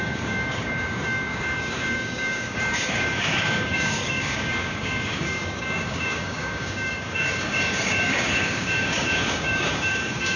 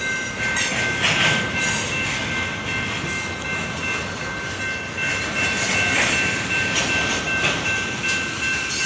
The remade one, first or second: first